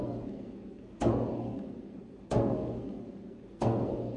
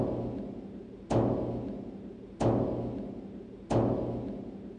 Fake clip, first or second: first